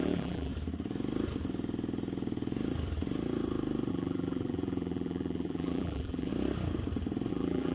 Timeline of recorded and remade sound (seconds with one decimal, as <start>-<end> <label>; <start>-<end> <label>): 0.0-0.5 remade; 0.5-3.9 recorded; 3.9-6.3 remade; 6.3-7.3 recorded; 7.3-7.7 remade